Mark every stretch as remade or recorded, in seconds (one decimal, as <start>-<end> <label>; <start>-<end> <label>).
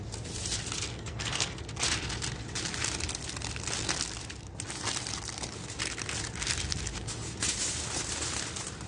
0.0-0.9 recorded; 0.9-1.6 remade; 1.6-8.9 recorded